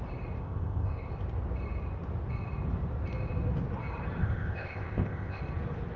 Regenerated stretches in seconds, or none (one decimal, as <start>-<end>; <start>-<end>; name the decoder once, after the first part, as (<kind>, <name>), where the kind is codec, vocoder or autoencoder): 0.4-1.1 (codec, ZipCodec); 4.2-5.4